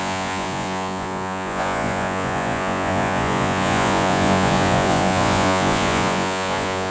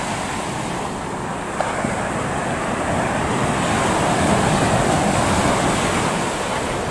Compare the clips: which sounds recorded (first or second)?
second